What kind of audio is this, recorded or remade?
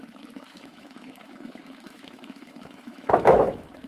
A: remade